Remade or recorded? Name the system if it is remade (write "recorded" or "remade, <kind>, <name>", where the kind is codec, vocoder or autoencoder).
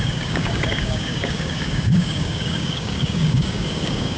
remade, codec, DAC